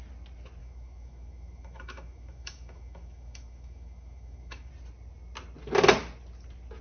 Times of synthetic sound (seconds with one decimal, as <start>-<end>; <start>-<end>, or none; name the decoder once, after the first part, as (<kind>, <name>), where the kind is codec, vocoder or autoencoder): 0.6-4.7 (autoencoder, DAC-VAE)